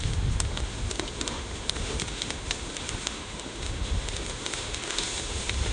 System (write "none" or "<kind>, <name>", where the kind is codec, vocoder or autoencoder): autoencoder, DAC-VAE